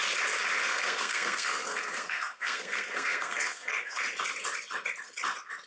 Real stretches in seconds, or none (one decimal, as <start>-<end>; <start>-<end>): 0.0-0.6; 4.0-5.7